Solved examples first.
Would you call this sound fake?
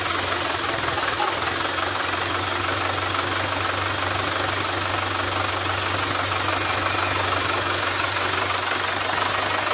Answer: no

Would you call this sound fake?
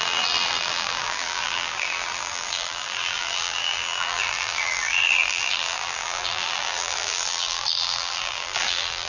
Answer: yes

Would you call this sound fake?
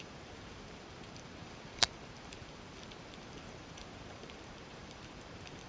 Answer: yes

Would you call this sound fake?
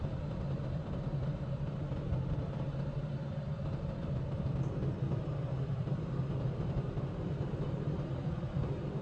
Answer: yes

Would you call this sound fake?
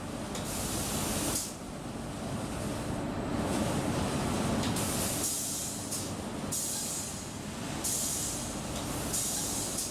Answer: no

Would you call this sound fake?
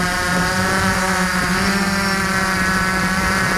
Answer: yes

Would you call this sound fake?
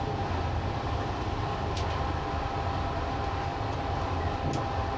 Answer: no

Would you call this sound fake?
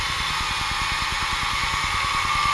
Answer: no